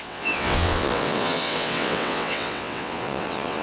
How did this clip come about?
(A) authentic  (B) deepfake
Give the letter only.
B